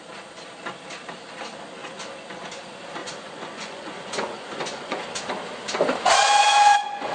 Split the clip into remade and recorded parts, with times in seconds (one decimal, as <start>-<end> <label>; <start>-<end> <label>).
0.0-3.0 recorded; 3.0-5.0 remade; 5.0-6.2 recorded; 6.2-7.1 remade